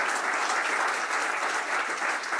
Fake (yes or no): no